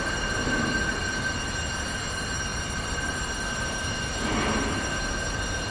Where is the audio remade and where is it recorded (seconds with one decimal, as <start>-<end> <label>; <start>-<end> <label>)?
0.0-5.7 recorded